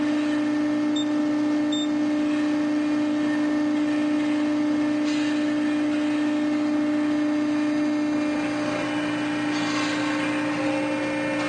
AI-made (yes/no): no